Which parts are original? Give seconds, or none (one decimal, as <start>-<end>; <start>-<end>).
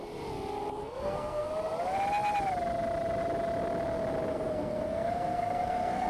0.0-0.8; 1.5-4.3